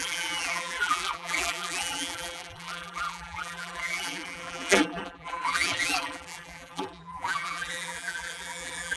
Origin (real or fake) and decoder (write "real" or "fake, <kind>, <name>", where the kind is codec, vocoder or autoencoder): fake, vocoder, BigVGAN v2